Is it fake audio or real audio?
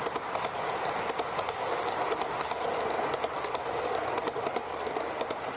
real